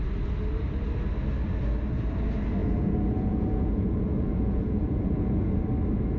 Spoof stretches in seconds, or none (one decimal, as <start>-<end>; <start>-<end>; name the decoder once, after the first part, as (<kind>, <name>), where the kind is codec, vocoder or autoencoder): 2.6-5.6 (vocoder, Vocos)